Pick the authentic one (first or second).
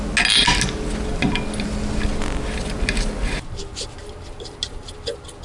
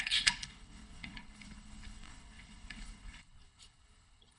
first